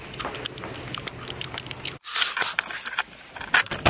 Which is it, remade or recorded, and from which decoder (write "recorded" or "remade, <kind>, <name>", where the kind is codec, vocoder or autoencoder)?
recorded